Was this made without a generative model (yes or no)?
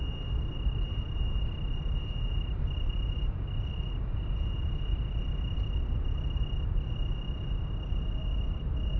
yes